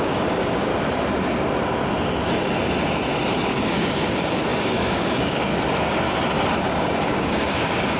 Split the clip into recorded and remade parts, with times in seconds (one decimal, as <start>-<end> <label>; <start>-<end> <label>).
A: 0.0-0.7 remade; 0.7-3.5 recorded; 3.5-5.5 remade; 5.5-6.6 recorded; 6.6-8.0 remade